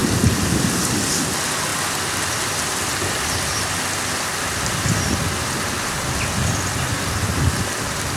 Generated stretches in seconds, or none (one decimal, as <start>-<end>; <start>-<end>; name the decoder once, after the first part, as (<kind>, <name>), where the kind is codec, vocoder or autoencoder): none